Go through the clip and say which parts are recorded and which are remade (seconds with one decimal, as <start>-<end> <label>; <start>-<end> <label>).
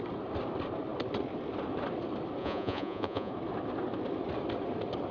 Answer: 0.0-2.4 recorded; 2.4-3.3 remade; 3.3-5.1 recorded